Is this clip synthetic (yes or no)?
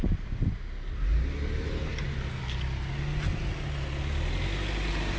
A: no